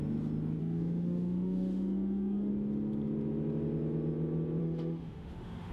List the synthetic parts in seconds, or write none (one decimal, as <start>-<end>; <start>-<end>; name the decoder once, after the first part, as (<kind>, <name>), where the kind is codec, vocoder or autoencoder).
0.6-2.5 (autoencoder, DAC-VAE); 4.6-5.7